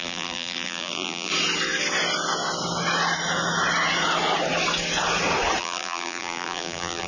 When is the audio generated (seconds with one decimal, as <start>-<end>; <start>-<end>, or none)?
0.0-1.3; 5.6-7.1